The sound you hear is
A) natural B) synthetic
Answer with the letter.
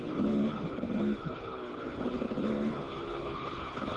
B